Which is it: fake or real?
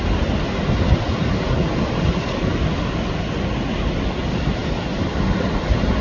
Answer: real